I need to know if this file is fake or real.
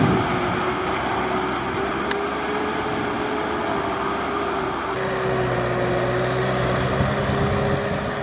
real